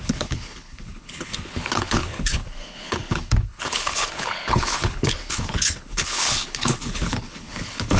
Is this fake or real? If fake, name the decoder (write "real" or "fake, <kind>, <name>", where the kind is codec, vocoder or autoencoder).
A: fake, codec, HILCodec